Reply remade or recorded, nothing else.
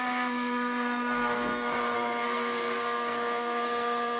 remade